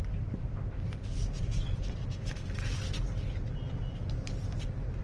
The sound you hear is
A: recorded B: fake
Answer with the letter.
A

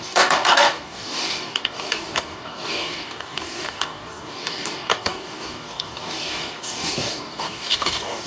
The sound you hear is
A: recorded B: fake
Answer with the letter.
B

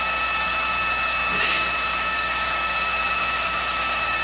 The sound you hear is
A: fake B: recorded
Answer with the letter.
A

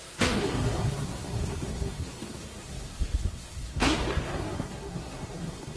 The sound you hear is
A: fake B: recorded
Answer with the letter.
A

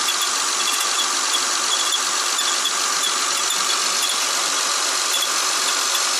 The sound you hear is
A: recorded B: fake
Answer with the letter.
A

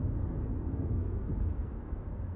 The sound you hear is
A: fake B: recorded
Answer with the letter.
A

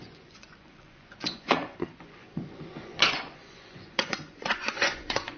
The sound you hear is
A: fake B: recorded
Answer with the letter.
A